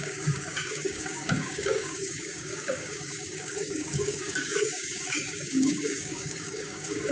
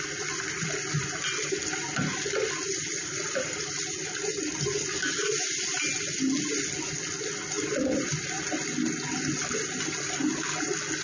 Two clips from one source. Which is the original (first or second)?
second